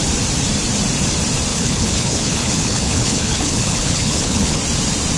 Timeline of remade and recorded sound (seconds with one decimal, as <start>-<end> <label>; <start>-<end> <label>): 0.0-1.5 recorded; 1.5-4.6 remade; 4.6-5.2 recorded